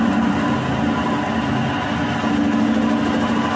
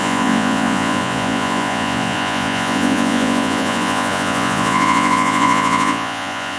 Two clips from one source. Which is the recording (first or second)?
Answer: first